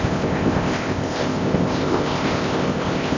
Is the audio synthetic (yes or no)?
yes